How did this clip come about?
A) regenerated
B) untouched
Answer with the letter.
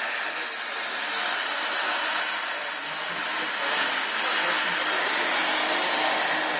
B